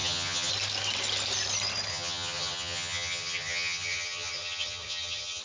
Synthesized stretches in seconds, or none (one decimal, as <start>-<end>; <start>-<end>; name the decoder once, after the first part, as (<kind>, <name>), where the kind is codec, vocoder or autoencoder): 0.0-0.5 (vocoder, HiFi-GAN); 1.9-5.4

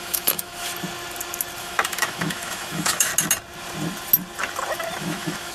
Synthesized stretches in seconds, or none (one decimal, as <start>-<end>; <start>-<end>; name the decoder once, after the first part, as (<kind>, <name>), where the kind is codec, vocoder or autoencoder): 0.0-0.5 (autoencoder, DAC-VAE); 1.6-3.1; 5.0-5.5